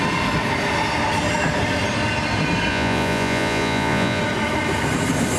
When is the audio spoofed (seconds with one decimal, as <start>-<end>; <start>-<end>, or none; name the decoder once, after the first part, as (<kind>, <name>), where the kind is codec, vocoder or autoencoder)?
2.7-4.2 (vocoder, Vocos)